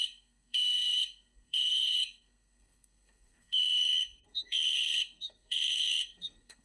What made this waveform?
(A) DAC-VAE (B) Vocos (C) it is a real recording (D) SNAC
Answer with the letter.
D